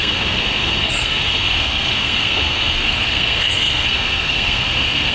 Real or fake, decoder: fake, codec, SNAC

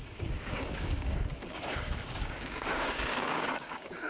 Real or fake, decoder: fake, codec, DAC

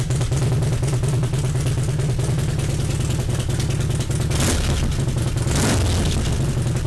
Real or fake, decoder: real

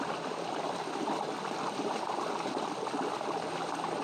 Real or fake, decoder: fake, vocoder, BigVGAN v2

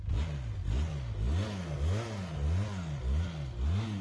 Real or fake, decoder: real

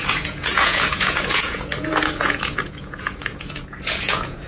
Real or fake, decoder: fake, vocoder, Vocos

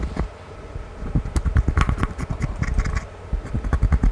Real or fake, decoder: real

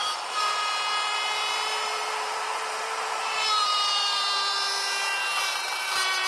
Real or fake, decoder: fake, vocoder, BigVGAN v2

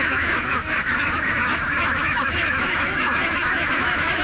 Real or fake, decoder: fake, autoencoder, DAC-VAE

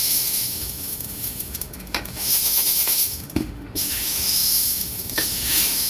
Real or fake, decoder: fake, autoencoder, DAC-VAE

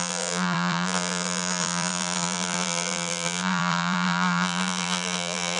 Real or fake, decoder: fake, vocoder, BigVGAN v2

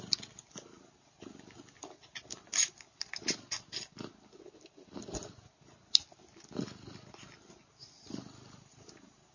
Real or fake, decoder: real